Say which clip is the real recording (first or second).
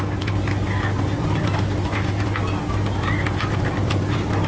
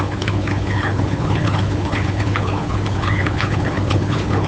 first